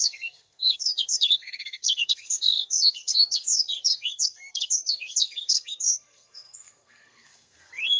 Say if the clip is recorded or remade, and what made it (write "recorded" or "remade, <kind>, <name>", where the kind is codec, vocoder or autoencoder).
remade, codec, SNAC